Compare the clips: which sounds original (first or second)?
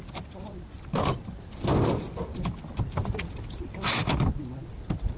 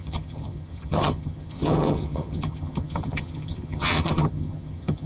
first